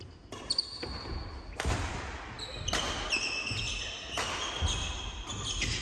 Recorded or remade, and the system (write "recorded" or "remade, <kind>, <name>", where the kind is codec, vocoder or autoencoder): recorded